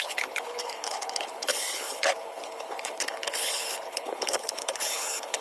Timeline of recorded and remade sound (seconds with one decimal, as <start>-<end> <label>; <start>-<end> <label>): 0.0-5.4 remade